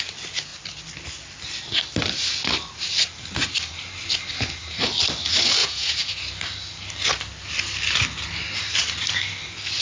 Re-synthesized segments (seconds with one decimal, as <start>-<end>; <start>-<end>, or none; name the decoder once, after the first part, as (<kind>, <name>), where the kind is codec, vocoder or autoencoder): 5.6-6.2 (vocoder, Vocos)